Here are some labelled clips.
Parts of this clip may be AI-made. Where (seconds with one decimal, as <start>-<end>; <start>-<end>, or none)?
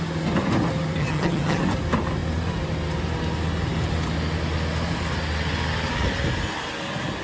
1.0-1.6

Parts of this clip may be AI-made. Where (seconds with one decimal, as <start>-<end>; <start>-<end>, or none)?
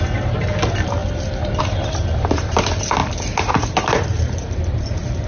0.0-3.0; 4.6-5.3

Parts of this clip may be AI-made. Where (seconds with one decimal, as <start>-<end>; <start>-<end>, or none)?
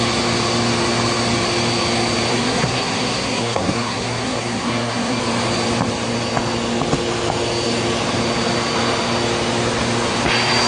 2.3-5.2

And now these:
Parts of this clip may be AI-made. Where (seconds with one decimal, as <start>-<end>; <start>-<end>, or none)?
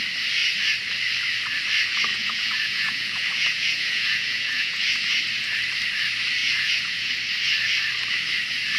2.1-4.8; 6.4-7.1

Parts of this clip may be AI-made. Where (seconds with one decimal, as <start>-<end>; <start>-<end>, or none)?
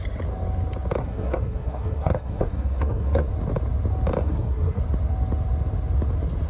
1.0-3.3; 4.2-4.8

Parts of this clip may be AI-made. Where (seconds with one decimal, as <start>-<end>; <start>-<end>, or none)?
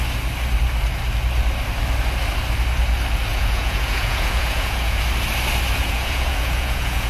3.3-5.0; 5.8-7.1